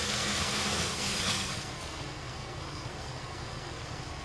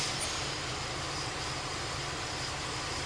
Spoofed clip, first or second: first